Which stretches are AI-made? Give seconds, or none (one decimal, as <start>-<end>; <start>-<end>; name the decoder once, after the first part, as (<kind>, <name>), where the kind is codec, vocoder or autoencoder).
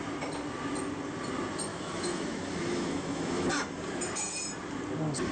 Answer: 1.7-3.5 (autoencoder, DAC-VAE)